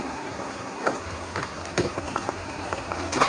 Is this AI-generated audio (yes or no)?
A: yes